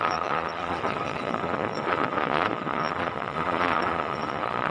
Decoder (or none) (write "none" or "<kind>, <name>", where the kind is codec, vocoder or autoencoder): vocoder, Vocos